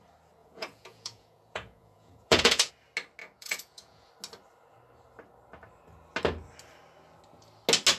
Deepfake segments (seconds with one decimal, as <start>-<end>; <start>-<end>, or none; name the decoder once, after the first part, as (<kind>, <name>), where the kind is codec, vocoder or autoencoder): 0.4-2.7 (vocoder, Vocos); 3.2-4.1